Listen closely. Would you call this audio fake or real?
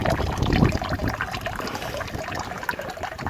real